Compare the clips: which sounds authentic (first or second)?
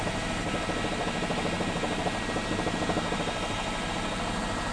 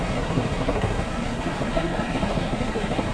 first